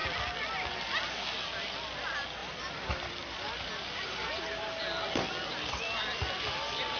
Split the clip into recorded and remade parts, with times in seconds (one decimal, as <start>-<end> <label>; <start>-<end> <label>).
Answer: 0.0-2.4 recorded; 2.4-4.4 remade; 4.4-7.0 recorded